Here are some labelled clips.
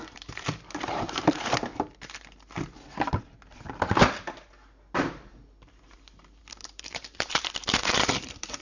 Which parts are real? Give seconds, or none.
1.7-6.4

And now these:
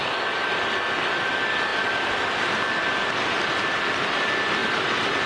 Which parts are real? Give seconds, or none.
0.0-5.3